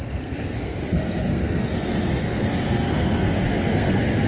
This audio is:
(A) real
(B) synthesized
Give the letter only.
B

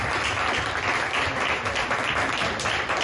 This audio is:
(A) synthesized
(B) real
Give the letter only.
B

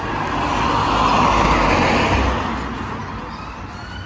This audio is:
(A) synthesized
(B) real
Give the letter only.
B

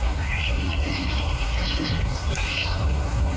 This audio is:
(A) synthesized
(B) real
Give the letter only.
A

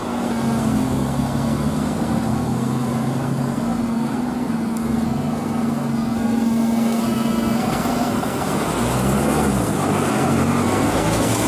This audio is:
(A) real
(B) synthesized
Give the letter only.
B